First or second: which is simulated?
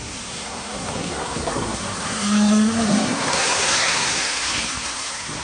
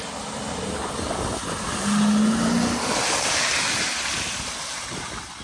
first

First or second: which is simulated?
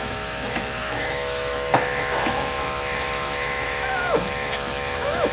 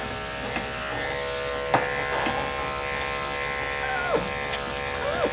first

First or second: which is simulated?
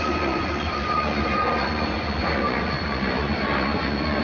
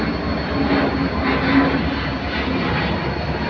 first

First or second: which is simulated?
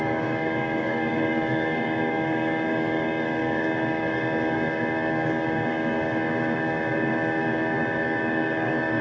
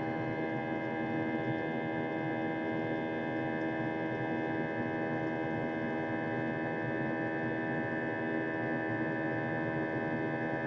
first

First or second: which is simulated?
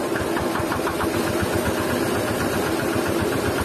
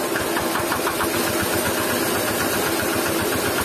first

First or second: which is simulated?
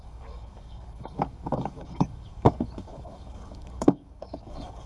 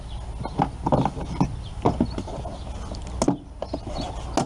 first